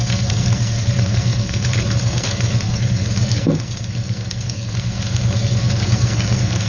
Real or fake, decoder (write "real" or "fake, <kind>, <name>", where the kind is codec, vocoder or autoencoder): fake, codec, SNAC